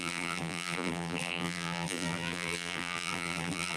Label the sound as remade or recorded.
remade